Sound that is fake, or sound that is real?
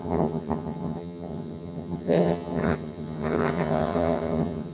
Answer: fake